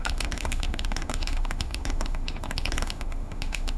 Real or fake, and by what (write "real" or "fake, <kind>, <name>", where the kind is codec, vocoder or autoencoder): fake, autoencoder, DAC-VAE